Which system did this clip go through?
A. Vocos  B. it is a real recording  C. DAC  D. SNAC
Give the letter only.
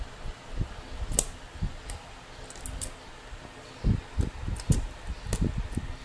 B